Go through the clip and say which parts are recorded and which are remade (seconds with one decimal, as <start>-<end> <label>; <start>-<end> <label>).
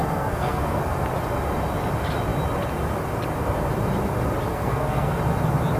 0.0-0.8 remade; 0.8-4.5 recorded; 4.5-5.2 remade; 5.2-5.8 recorded